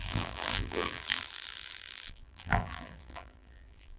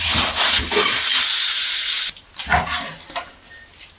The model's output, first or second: first